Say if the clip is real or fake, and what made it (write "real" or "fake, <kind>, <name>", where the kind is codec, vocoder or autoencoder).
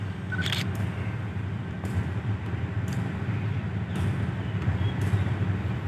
real